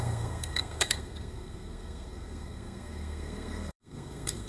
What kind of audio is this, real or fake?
fake